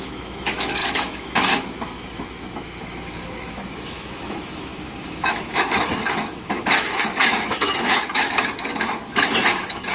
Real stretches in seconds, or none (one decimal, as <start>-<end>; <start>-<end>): none